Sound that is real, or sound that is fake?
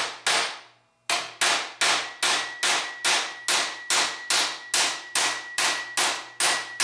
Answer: real